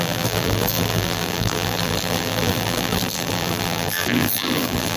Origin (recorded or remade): remade